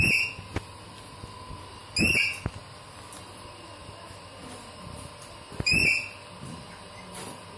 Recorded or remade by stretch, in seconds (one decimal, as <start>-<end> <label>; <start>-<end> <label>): 0.0-7.6 recorded